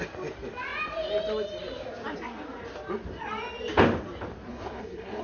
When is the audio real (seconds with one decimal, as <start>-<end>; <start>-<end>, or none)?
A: 0.0-4.5

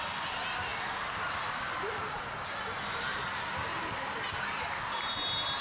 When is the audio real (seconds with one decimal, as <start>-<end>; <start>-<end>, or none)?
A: 0.0-5.6